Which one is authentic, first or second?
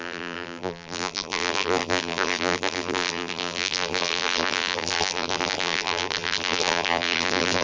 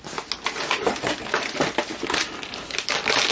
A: second